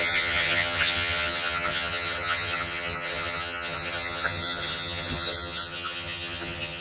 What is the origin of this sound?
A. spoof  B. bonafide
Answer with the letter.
A